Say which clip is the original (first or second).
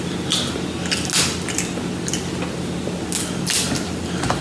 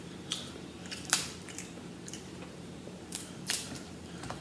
first